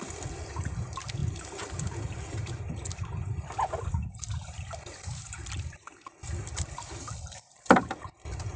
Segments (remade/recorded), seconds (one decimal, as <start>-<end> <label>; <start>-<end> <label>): 0.0-8.6 remade